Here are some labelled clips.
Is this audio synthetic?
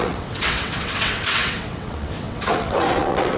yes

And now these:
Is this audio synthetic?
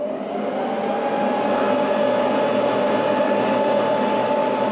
no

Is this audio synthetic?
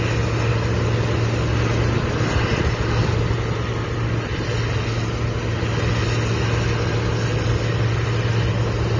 no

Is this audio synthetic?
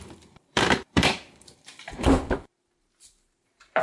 yes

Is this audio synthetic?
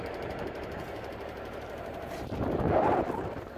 yes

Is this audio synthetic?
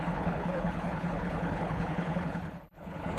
yes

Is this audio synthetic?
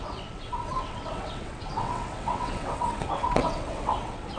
yes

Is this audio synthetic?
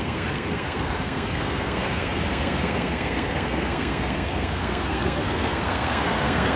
yes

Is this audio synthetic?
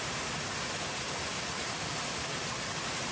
no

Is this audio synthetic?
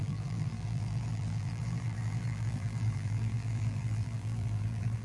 yes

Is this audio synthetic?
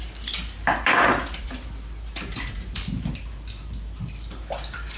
no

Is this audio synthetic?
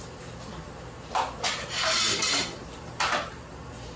no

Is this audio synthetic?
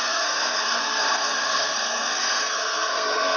yes